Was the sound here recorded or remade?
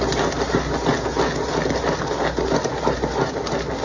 recorded